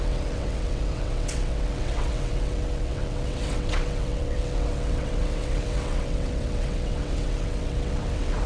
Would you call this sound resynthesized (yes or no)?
yes